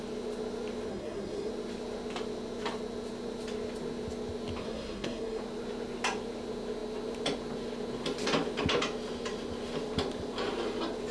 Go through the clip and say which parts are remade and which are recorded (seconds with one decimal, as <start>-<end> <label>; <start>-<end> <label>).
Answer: 0.0-0.9 recorded; 0.9-1.5 remade; 1.5-4.6 recorded; 4.6-5.4 remade; 5.4-11.1 recorded